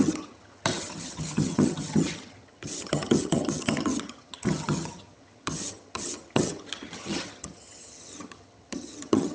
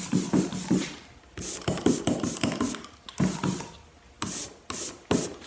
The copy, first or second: first